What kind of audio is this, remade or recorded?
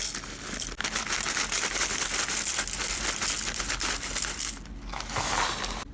recorded